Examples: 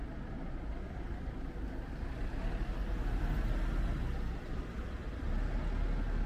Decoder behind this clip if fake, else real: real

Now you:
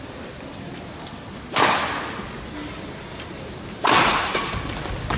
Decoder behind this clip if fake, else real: real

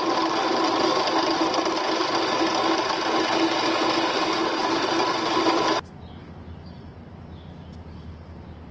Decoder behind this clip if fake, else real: real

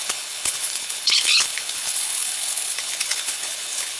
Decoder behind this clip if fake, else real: fake, codec, HILCodec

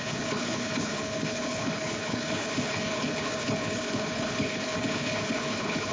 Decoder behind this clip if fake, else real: fake, codec, HILCodec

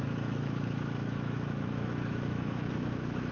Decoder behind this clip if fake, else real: fake, autoencoder, DAC-VAE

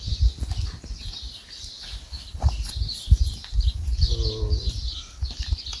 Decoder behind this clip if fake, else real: real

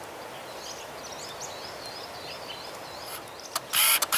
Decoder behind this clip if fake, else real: real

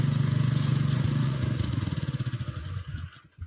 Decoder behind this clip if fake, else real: fake, vocoder, Vocos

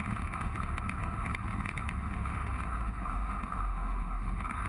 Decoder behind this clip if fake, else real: fake, autoencoder, DAC-VAE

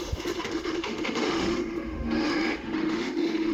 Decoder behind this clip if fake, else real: fake, autoencoder, DAC-VAE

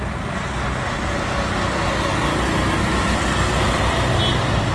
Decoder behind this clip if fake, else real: real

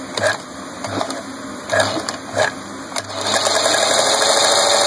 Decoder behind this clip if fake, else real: real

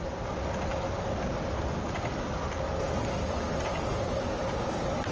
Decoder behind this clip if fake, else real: real